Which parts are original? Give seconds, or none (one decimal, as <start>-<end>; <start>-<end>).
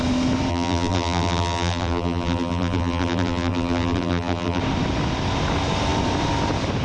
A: 0.0-0.5; 4.6-6.8